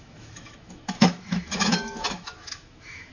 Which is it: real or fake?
fake